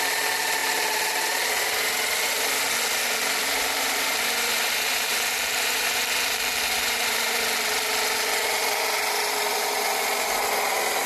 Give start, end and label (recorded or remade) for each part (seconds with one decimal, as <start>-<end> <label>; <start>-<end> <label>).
0.0-3.4 recorded; 3.4-7.4 remade; 7.4-11.1 recorded